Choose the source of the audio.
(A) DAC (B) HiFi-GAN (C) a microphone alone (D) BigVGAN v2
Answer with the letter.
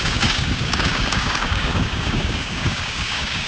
A